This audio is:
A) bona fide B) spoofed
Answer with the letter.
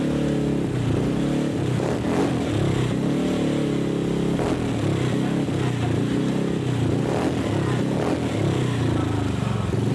A